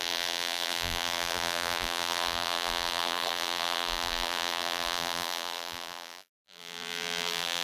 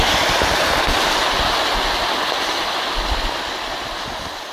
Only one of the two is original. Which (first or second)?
second